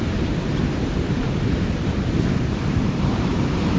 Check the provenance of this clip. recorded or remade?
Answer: remade